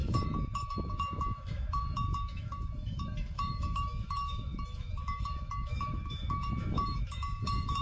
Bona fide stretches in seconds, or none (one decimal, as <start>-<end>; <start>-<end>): none